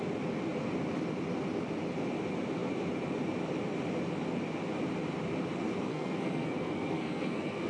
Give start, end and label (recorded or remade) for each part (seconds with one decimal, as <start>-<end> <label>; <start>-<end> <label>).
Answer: 0.0-5.9 recorded; 5.9-7.7 remade